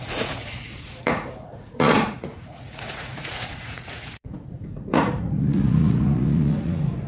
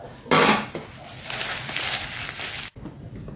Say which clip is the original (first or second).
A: second